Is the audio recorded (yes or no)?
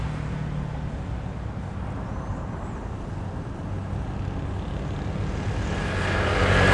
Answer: yes